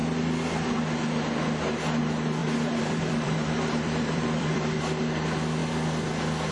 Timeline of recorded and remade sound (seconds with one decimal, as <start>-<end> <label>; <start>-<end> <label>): 0.0-2.4 recorded; 2.4-4.8 remade; 4.8-6.5 recorded